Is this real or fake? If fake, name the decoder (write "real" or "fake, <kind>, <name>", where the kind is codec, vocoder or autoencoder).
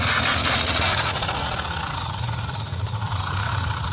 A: fake, vocoder, Vocos